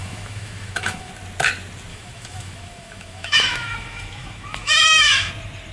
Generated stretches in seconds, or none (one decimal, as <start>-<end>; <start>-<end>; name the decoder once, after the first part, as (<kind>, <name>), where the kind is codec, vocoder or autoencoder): 0.0-1.1 (autoencoder, DAC-VAE); 1.9-5.3